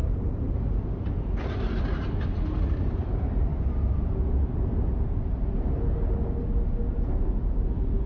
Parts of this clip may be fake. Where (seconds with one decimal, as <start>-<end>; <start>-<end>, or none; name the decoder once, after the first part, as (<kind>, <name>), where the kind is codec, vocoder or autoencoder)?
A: 0.0-1.7 (vocoder, BigVGAN v2); 3.5-4.0